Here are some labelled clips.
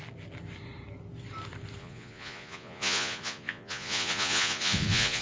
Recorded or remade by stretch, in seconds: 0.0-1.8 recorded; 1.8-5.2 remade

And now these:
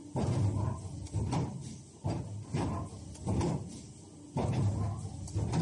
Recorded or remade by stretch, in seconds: 0.0-5.6 recorded

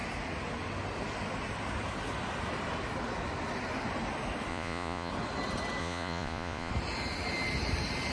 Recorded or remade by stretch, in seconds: 0.0-4.5 recorded; 4.5-5.1 remade; 5.1-5.8 recorded; 5.8-6.7 remade; 6.7-8.1 recorded

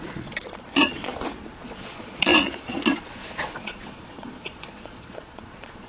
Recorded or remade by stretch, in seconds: 0.0-1.1 remade; 1.1-1.6 recorded; 1.6-5.9 remade

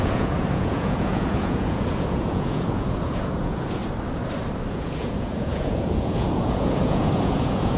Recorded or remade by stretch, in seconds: 0.0-3.8 remade; 3.8-4.7 recorded; 4.7-7.8 remade

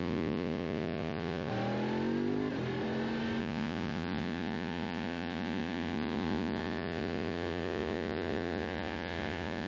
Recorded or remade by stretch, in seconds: 0.0-1.5 remade; 1.5-3.4 recorded; 3.4-9.7 remade